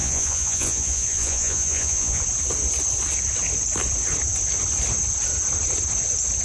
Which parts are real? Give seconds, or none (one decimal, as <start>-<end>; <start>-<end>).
2.2-6.4